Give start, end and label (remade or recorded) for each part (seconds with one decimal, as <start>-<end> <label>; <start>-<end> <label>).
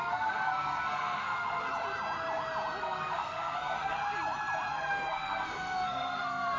0.0-1.7 remade; 1.7-2.8 recorded; 2.8-4.1 remade; 4.1-4.7 recorded; 4.7-6.6 remade